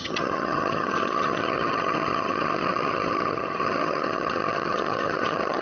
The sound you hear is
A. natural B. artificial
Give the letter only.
B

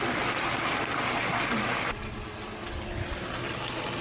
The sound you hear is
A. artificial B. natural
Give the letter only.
B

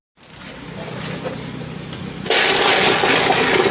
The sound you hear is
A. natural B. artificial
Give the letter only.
A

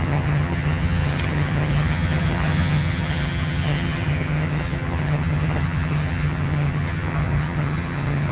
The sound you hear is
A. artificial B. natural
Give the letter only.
A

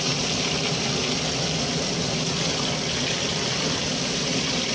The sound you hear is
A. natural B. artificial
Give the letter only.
A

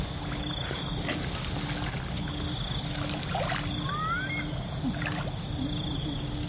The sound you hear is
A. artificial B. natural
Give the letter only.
B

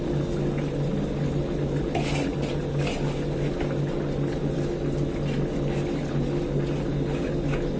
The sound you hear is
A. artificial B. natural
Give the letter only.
B